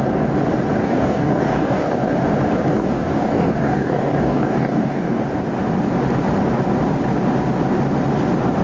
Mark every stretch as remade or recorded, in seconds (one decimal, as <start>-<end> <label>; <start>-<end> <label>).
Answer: 0.0-0.8 recorded; 0.8-2.1 remade; 2.1-2.7 recorded; 2.7-5.2 remade; 5.2-8.6 recorded